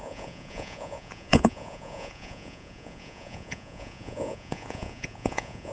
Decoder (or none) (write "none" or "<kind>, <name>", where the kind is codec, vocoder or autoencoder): vocoder, Vocos